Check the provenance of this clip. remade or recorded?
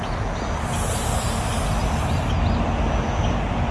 recorded